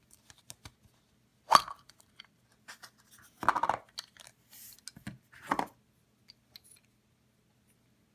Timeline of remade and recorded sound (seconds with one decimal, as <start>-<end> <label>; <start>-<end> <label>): 0.0-1.3 recorded; 1.3-2.2 remade; 2.2-8.1 recorded